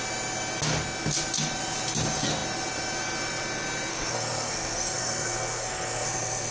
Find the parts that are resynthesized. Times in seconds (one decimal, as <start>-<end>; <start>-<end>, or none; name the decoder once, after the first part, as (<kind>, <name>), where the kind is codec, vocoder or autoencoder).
3.9-6.5 (codec, SNAC)